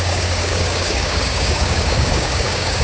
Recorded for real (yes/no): no